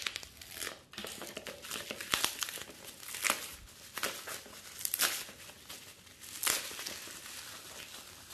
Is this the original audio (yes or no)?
yes